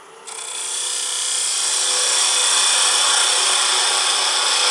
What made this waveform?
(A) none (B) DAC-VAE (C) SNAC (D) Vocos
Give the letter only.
A